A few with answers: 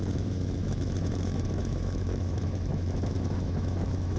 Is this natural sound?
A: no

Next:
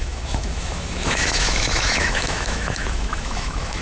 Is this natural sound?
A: no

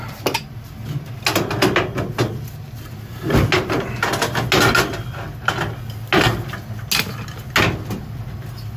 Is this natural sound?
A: yes